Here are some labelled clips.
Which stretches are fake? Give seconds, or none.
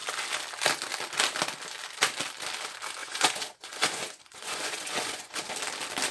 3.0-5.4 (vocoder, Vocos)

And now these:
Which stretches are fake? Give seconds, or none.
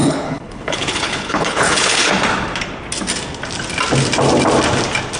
0.0-2.1 (codec, HILCodec)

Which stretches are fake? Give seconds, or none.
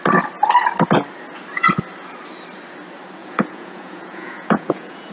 3.2-5.1 (vocoder, Vocos)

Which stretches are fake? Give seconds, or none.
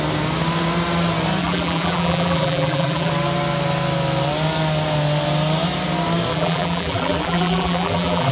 1.4-3.1 (vocoder, BigVGAN v2); 6.3-8.3